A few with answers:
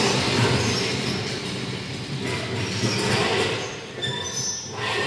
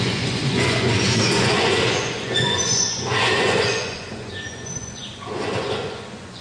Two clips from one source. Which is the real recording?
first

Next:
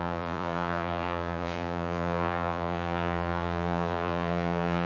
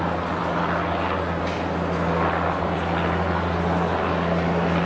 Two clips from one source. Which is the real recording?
second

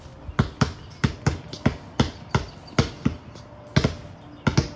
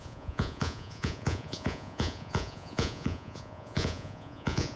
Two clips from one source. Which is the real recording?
first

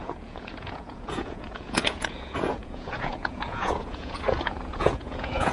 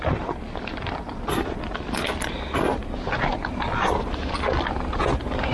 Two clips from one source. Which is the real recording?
second